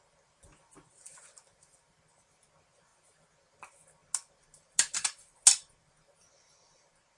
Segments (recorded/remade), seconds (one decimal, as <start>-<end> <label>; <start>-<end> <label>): 0.0-7.2 recorded